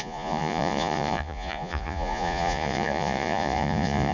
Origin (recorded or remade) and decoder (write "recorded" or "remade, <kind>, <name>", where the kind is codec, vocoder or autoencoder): remade, vocoder, Vocos